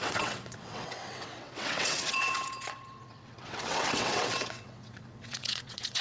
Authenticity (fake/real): fake